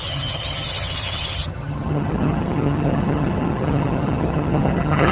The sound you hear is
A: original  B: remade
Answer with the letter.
B